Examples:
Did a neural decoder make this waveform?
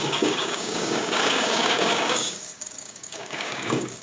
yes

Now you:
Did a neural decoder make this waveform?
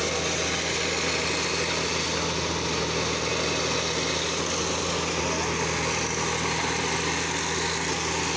no